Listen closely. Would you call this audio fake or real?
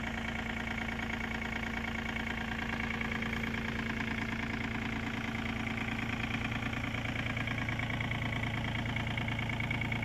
real